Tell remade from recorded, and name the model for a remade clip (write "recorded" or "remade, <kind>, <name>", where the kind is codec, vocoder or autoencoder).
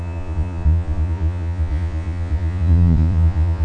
remade, vocoder, Vocos